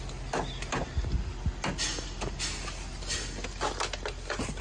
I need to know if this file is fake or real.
real